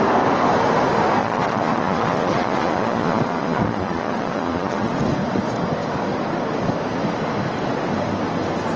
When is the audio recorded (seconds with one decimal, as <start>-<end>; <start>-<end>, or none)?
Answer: 0.0-1.2; 4.9-8.8